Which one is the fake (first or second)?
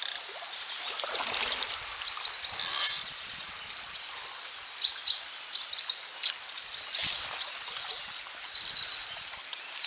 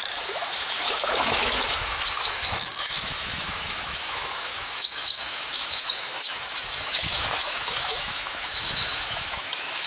second